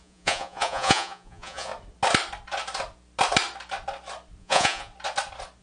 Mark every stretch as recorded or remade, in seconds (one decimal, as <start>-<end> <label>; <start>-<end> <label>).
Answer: 0.0-1.7 remade; 1.7-4.4 recorded; 4.4-4.9 remade; 4.9-5.6 recorded